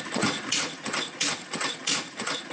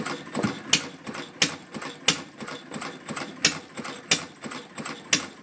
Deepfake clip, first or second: first